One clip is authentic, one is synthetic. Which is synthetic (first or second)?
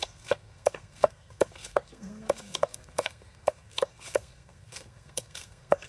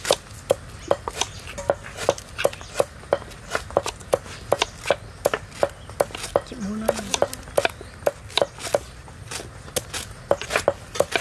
first